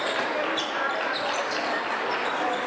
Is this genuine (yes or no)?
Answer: no